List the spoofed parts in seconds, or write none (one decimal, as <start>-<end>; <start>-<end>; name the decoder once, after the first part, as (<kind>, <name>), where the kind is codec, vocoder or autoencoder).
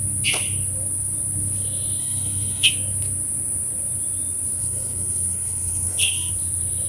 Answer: 2.0-2.7 (codec, SNAC); 4.6-6.3